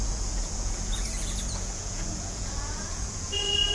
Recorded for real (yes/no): no